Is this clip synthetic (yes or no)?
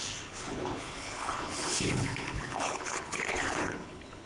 yes